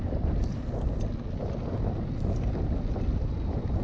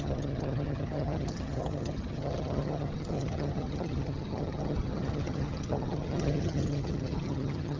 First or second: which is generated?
second